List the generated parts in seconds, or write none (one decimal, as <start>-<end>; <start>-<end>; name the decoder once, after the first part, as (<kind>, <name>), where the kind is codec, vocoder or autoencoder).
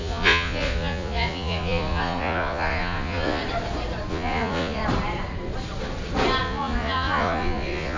0.0-3.4 (vocoder, Vocos); 4.1-4.8; 6.4-8.0